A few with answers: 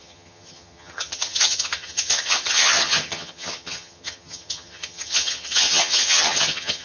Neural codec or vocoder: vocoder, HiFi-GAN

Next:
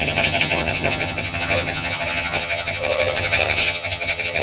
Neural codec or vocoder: vocoder, HiFi-GAN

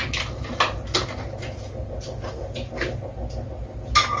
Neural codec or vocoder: none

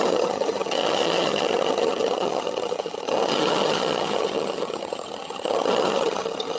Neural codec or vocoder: vocoder, HiFi-GAN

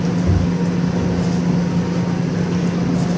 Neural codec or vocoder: none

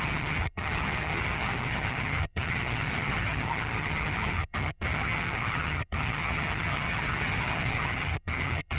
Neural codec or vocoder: vocoder, HiFi-GAN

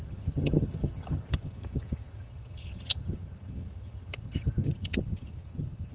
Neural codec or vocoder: vocoder, HiFi-GAN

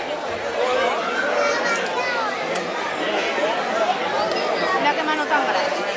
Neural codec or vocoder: none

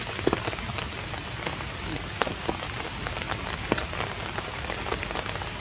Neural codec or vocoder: none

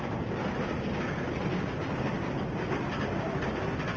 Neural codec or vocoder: none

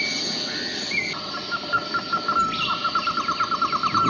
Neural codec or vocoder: none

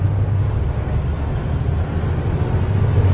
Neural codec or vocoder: none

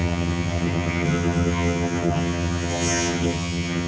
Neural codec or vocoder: vocoder, HiFi-GAN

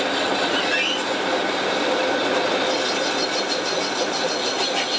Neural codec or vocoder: none